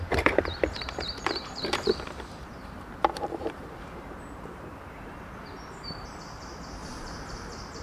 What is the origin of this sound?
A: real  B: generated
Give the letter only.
B